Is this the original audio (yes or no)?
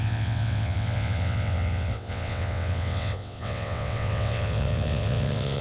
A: no